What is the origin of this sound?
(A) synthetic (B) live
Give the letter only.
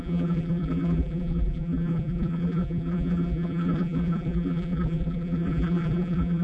A